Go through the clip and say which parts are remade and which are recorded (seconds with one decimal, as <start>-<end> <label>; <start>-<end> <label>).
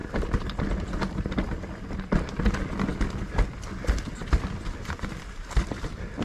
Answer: 0.0-0.6 remade; 0.6-6.2 recorded